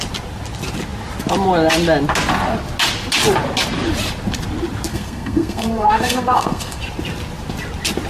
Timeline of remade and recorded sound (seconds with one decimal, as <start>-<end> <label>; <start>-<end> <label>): 0.0-4.9 recorded; 4.9-6.8 remade; 6.8-8.1 recorded